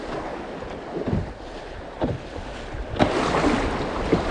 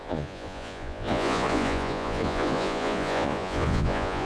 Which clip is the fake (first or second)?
second